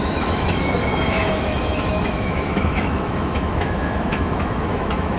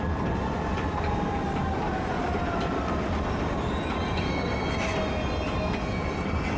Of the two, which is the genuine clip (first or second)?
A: second